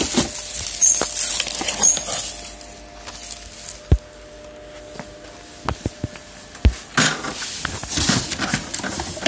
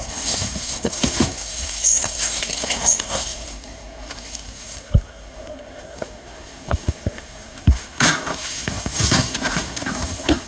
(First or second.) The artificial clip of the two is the second